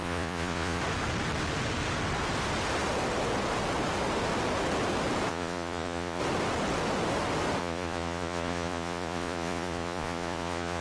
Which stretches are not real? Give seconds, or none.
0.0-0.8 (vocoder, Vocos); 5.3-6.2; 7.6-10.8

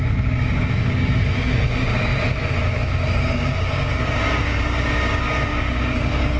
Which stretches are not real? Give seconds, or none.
0.0-2.1 (codec, DAC); 2.7-6.4